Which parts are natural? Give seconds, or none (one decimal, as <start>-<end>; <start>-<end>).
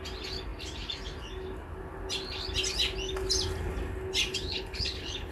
0.0-4.3